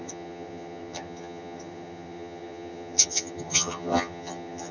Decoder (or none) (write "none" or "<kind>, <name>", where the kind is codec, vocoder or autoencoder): vocoder, HiFi-GAN